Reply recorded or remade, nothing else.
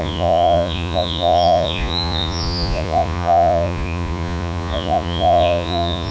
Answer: remade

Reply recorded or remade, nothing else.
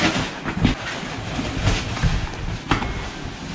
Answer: recorded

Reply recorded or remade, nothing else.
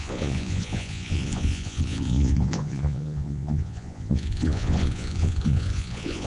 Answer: remade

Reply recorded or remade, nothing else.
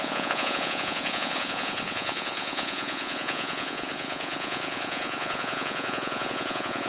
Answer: remade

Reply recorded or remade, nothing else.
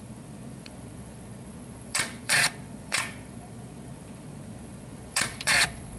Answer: remade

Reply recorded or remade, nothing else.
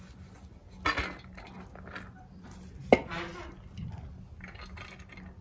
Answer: recorded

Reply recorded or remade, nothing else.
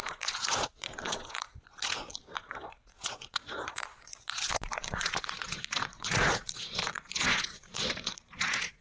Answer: remade